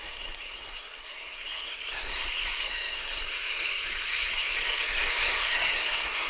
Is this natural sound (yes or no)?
no